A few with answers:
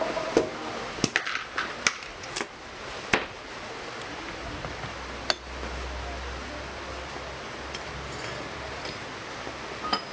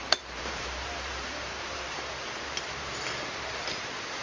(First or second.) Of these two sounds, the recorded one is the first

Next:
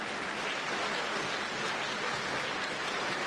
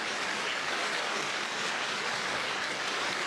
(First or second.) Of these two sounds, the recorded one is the first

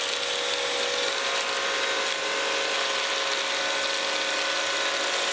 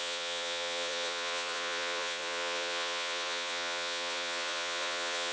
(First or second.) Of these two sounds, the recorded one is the first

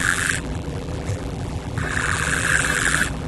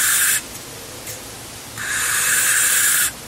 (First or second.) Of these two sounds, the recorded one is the second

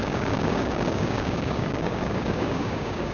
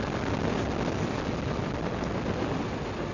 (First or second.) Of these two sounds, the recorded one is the second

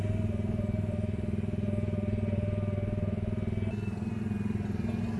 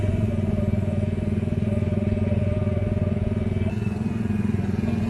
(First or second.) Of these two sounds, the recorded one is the first